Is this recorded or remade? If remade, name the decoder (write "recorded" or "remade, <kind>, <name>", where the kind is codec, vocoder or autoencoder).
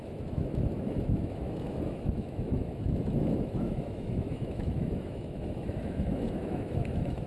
remade, autoencoder, DAC-VAE